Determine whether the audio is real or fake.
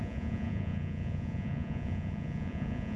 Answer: fake